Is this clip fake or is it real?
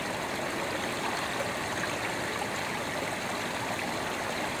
real